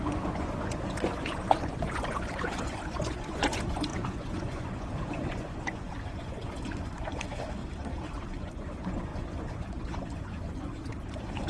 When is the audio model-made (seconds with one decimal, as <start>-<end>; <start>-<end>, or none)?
0.0-7.6; 8.2-11.5